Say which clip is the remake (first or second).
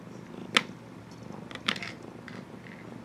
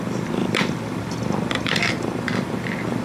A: second